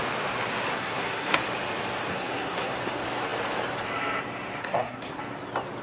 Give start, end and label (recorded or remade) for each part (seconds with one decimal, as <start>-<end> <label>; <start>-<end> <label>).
0.0-0.7 recorded; 0.7-1.4 remade; 1.4-2.1 recorded; 2.1-2.8 remade; 2.8-4.6 recorded; 4.6-5.2 remade; 5.2-5.8 recorded